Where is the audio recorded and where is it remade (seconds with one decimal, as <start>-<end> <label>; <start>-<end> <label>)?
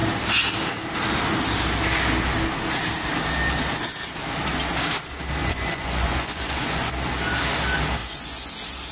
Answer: 0.0-5.4 recorded; 5.4-6.9 remade; 6.9-8.0 recorded; 8.0-8.5 remade; 8.5-8.9 recorded